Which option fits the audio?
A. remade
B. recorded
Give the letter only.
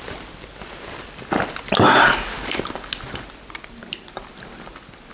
B